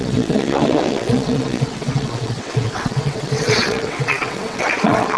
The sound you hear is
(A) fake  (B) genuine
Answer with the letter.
A